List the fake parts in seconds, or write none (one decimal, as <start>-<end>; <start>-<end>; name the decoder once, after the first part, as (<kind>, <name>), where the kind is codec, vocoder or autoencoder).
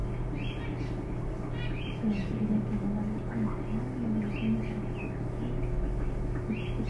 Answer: none